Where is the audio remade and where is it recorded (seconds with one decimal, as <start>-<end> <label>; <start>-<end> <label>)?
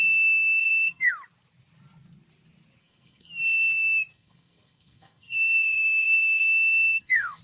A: 0.0-0.6 recorded; 0.6-1.1 remade; 1.1-2.8 recorded; 2.8-3.3 remade; 3.3-4.1 recorded; 4.1-7.4 remade